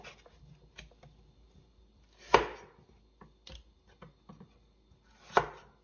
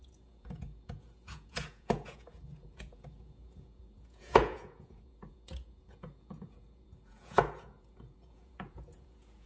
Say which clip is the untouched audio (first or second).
first